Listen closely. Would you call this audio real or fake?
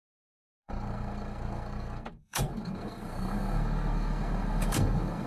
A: fake